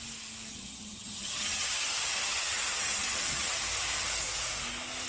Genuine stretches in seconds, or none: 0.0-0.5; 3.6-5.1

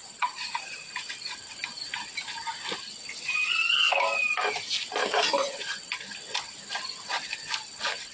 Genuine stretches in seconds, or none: 0.9-5.0; 5.6-8.1

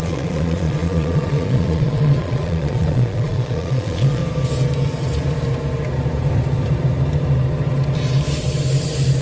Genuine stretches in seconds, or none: 4.2-9.2

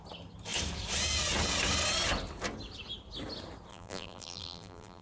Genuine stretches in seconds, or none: 0.0-3.7

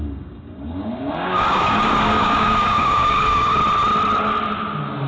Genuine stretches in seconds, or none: 3.6-5.1

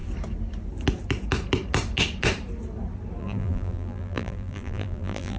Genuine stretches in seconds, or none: 0.0-3.2

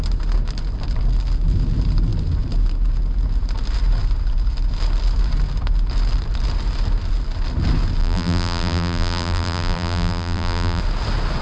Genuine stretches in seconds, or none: 0.0-8.0; 10.8-11.4